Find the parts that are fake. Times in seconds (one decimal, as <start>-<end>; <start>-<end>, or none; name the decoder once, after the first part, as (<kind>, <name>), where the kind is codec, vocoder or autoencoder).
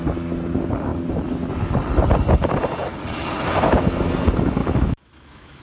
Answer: 4.6-5.6 (autoencoder, DAC-VAE)